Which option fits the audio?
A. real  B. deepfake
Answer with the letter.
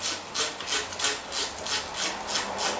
A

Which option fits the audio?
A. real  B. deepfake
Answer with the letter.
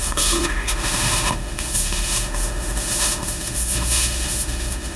B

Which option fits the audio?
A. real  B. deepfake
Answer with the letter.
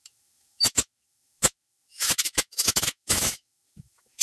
B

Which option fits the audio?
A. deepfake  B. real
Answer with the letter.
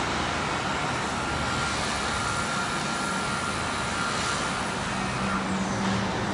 B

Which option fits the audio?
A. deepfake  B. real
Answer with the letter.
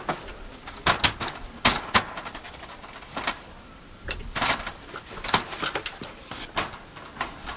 B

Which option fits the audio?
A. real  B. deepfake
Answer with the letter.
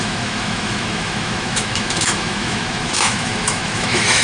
B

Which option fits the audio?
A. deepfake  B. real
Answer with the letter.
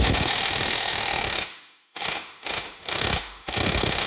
A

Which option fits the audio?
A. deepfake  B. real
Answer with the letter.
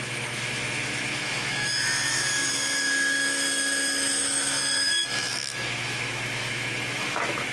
A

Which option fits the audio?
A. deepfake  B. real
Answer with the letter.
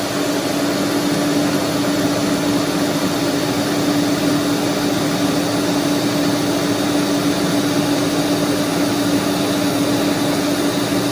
B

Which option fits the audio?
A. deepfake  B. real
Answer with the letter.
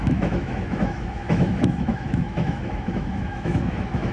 A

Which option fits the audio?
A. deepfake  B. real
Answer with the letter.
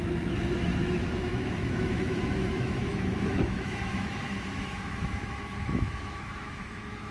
A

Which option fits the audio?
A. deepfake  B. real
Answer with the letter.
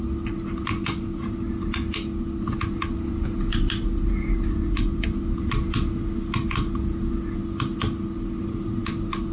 B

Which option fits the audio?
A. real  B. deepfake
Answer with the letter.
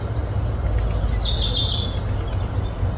A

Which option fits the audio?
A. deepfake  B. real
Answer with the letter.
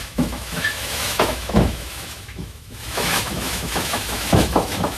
A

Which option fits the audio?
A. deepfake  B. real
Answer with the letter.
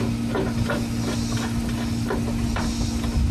B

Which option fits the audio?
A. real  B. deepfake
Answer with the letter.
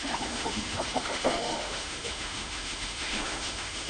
B